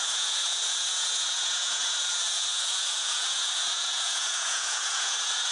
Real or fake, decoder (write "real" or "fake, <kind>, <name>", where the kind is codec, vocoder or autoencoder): fake, vocoder, Vocos